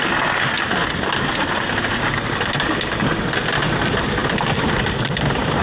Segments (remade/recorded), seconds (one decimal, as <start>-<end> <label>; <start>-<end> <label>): 0.0-0.8 recorded; 0.8-1.9 remade; 1.9-4.2 recorded; 4.2-5.6 remade